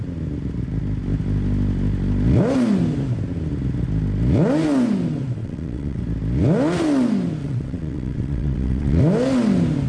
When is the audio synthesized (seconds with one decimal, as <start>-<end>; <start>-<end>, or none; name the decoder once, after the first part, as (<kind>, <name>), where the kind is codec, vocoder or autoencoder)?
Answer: 5.4-6.0 (vocoder, WaveNeXt); 7.4-9.0